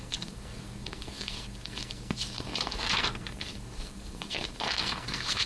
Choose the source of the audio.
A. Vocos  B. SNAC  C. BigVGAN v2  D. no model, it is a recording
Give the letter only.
B